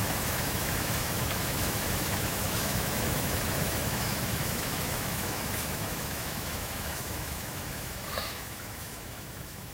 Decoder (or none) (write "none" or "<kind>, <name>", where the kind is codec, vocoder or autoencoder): autoencoder, DAC-VAE